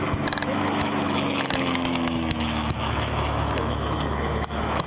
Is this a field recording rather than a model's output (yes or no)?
no